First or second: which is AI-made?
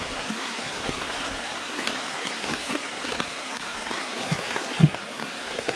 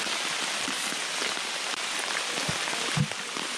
first